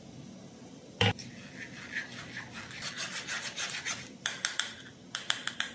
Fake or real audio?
real